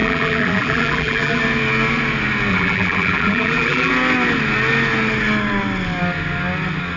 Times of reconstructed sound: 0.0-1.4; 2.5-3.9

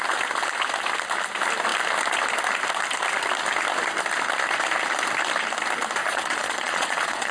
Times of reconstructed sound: 6.0-7.3

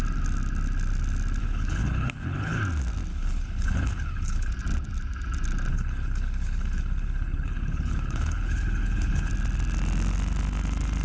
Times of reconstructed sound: 1.4-2.6; 3.1-4.5; 5.7-9.3

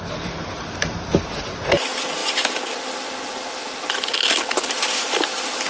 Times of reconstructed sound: none

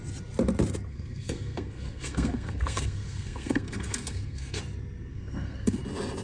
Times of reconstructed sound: 0.9-4.6; 5.1-5.8

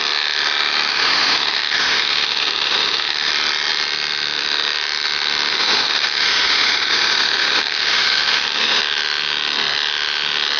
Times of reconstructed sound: 0.9-3.3; 5.5-8.8

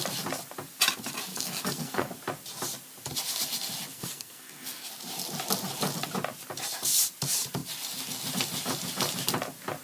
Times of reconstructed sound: 1.3-2.1; 3.9-4.9

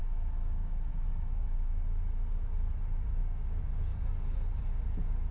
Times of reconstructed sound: none